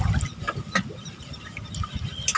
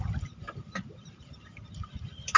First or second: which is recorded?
first